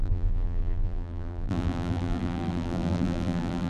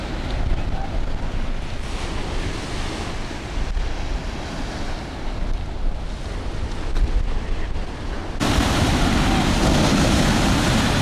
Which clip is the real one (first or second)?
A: second